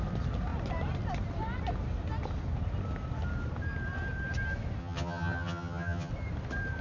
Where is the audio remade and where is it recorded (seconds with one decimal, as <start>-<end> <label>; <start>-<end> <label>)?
0.0-4.8 recorded; 4.8-6.1 remade; 6.1-6.8 recorded